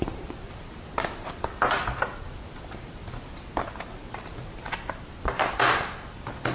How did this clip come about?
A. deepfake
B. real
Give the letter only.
B